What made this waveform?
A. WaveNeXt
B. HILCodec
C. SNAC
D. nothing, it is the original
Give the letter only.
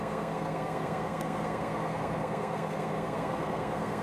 C